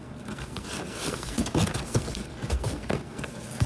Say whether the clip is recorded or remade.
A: remade